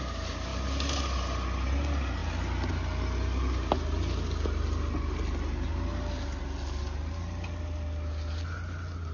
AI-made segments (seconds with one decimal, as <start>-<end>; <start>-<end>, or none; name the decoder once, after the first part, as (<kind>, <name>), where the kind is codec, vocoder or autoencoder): none